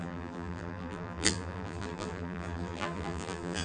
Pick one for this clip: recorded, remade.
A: remade